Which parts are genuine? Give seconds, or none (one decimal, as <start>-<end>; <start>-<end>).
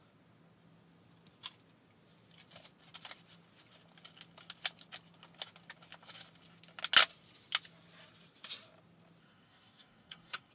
0.0-9.2